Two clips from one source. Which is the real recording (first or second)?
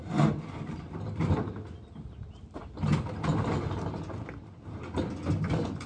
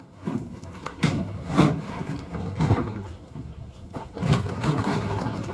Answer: first